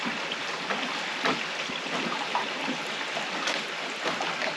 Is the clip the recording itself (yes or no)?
yes